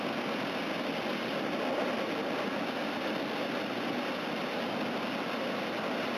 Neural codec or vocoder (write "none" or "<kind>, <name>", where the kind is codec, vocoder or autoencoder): none